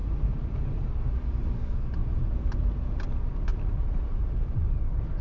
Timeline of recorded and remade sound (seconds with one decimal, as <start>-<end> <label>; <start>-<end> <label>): 0.0-0.9 remade; 0.9-2.0 recorded; 2.0-3.1 remade; 3.1-3.5 recorded; 3.5-5.2 remade